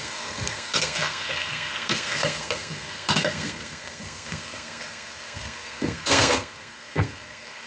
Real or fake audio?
fake